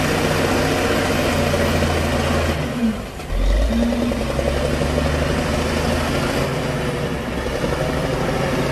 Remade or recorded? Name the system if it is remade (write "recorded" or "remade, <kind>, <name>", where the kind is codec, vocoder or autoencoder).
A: recorded